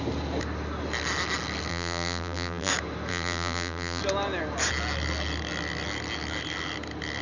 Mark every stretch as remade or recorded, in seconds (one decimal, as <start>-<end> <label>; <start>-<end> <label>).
0.0-1.7 recorded; 1.7-2.7 remade; 2.7-3.1 recorded; 3.1-4.0 remade; 4.0-7.2 recorded